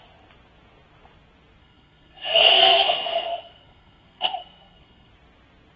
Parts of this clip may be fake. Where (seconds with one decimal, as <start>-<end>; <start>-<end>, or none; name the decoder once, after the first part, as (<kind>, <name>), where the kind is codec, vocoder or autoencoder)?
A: 1.6-5.1 (codec, SNAC)